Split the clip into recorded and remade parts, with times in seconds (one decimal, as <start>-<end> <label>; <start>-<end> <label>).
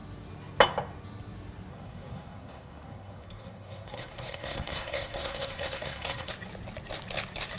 0.0-1.7 recorded; 1.7-6.3 remade; 6.3-7.6 recorded